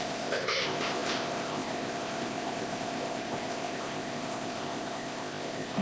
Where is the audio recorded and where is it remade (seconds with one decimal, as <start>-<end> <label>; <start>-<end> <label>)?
0.0-5.8 remade